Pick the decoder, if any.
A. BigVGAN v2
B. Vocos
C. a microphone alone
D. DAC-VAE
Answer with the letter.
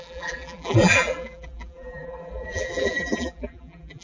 A